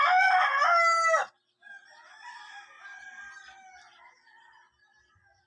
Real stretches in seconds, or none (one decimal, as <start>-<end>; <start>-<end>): 0.0-5.5